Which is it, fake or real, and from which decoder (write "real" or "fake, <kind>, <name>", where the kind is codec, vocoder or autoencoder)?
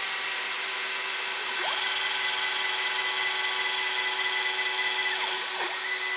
real